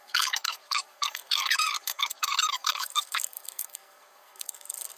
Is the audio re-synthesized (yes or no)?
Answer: yes